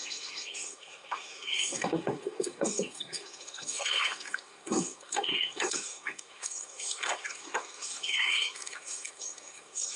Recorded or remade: remade